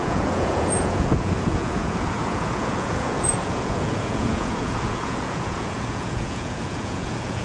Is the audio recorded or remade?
remade